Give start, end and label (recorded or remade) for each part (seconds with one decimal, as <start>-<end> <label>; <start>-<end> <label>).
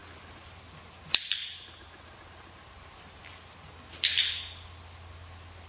0.0-5.7 recorded